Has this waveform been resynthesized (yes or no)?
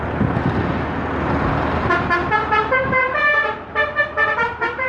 no